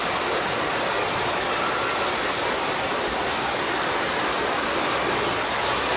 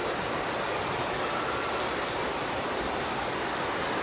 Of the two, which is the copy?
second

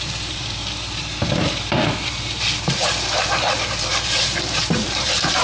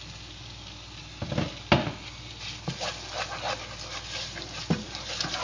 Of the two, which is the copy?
first